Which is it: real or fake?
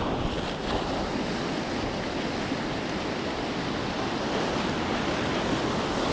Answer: real